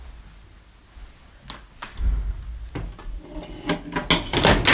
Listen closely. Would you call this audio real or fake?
real